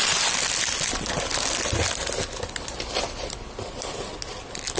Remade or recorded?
recorded